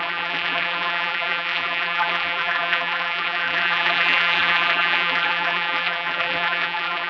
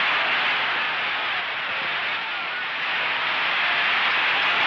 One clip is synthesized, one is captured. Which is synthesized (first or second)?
first